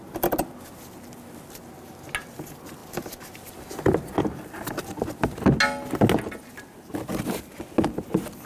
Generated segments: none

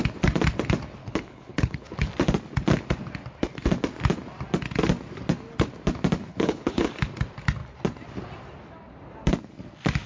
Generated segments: 1.0-2.1 (codec, HILCodec); 6.3-6.9